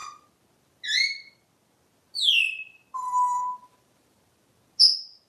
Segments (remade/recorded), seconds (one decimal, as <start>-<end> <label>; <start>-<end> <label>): 0.0-5.3 recorded